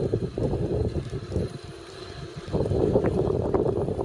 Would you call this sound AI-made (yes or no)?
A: yes